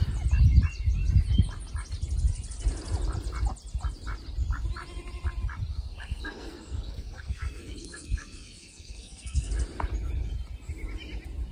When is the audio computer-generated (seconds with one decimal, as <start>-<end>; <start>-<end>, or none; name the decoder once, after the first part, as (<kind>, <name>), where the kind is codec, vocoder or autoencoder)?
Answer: 5.7-9.5 (codec, SNAC)